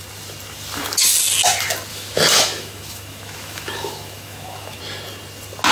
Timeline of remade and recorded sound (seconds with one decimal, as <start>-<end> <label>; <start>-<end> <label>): 0.0-1.9 recorded; 1.9-4.8 remade; 4.8-5.7 recorded